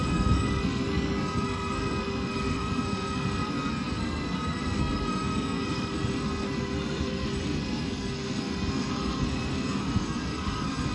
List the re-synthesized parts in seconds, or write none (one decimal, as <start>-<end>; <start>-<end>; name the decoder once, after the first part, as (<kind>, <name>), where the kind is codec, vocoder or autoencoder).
0.0-10.9 (codec, SNAC)